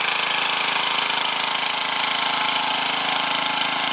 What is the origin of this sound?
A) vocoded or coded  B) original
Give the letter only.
B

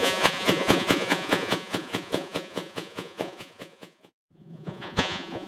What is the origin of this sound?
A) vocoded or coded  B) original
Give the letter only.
A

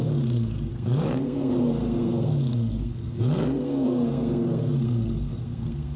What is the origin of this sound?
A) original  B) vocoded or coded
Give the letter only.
B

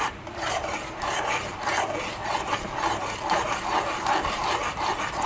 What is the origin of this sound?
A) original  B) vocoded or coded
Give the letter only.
B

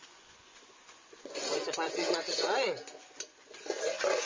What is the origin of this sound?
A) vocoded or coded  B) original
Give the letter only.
A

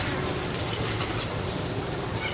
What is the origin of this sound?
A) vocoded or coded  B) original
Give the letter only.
B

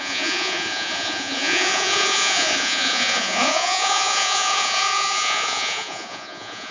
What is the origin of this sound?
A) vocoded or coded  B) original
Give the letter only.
A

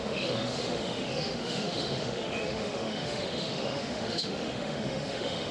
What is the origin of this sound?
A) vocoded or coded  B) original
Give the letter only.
A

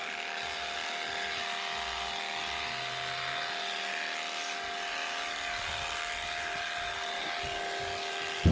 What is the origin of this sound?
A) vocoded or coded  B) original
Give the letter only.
B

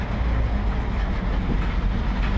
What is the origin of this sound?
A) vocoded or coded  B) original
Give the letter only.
B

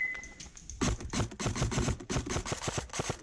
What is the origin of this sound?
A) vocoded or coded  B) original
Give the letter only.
B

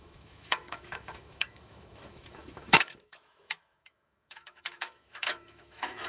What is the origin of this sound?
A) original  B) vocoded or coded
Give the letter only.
B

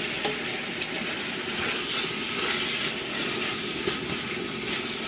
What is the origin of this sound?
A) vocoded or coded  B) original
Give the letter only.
B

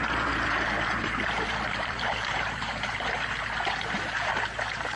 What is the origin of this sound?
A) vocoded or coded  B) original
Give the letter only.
A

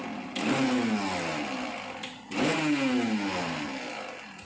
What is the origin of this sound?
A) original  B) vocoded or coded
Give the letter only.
A